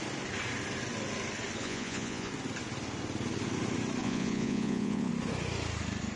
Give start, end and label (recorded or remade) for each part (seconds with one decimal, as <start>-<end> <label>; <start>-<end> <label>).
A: 0.0-1.6 recorded; 1.6-2.3 remade; 2.3-4.0 recorded; 4.0-5.1 remade; 5.1-6.2 recorded